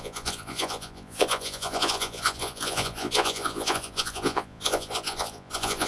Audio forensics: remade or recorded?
remade